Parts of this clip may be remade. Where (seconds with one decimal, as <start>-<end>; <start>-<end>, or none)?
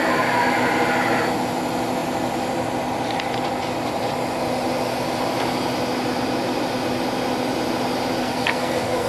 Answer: 8.2-9.1